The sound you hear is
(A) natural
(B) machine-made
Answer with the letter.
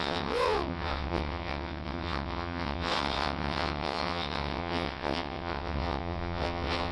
B